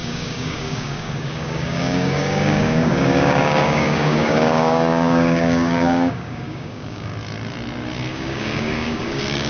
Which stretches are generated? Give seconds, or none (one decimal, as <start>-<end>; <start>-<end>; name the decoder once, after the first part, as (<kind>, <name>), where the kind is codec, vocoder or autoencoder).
0.0-7.1 (codec, DAC); 8.1-9.5